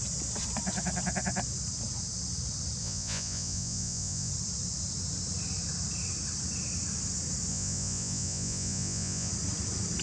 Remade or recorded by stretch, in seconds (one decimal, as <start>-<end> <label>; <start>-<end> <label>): 0.0-2.8 recorded; 2.8-4.3 remade; 4.3-7.5 recorded; 7.5-9.3 remade; 9.3-10.0 recorded

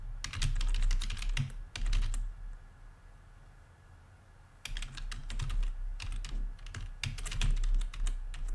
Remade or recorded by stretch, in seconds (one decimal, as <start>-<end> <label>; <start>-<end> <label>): 0.0-8.5 recorded

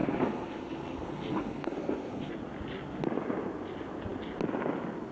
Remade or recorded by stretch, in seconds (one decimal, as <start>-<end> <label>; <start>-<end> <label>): 0.0-2.3 remade; 2.3-5.1 recorded

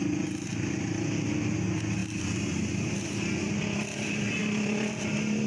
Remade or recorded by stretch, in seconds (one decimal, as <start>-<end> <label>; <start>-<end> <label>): 0.0-5.5 recorded

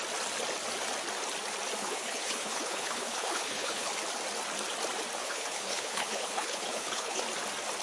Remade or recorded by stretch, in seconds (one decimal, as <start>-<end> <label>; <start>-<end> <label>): 0.0-1.8 recorded; 1.8-3.9 remade; 3.9-5.2 recorded; 5.2-7.2 remade; 7.2-7.8 recorded

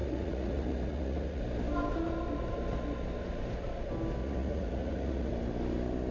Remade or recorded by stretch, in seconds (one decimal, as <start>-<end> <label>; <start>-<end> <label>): 0.0-1.4 remade; 1.4-4.2 recorded; 4.2-5.3 remade; 5.3-6.1 recorded

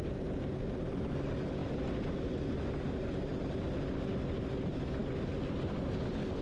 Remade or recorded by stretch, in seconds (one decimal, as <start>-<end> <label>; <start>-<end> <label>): 0.0-1.6 recorded; 1.6-2.2 remade; 2.2-6.4 recorded

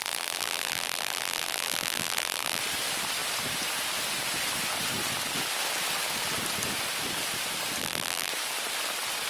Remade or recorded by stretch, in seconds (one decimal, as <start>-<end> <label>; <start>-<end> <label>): 0.0-2.6 remade; 2.6-7.8 recorded; 7.8-8.3 remade; 8.3-9.3 recorded